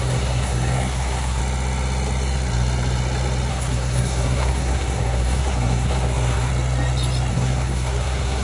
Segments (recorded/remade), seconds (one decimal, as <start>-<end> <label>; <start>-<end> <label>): 0.0-1.4 remade; 1.4-3.5 recorded; 3.5-6.5 remade; 6.5-7.3 recorded; 7.3-8.4 remade